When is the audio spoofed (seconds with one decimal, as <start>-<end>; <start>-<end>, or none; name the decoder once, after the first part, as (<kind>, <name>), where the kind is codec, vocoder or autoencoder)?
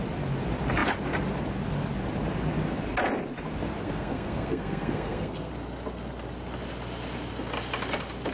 3.8-5.5 (codec, SNAC)